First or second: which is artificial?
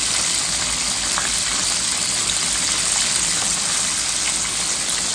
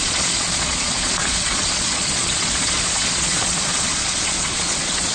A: second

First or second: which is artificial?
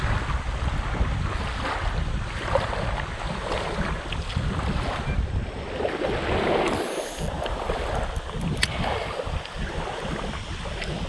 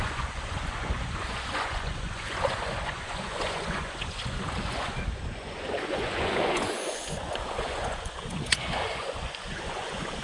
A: second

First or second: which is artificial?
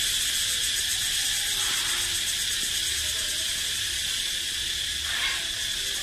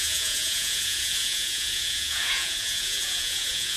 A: second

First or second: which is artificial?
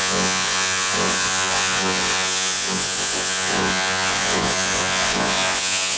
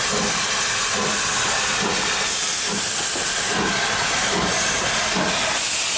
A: first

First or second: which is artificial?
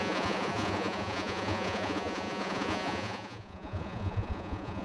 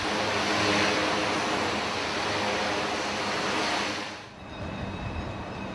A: first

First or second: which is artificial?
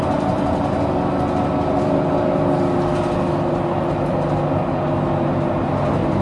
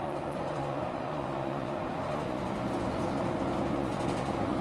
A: second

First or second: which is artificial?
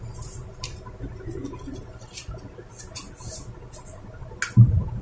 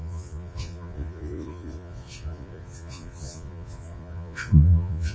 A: second